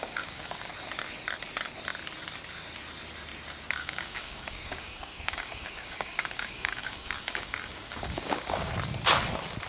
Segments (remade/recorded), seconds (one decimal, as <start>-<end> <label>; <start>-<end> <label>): 0.0-0.7 remade; 0.7-3.8 recorded; 3.8-8.7 remade; 8.7-9.7 recorded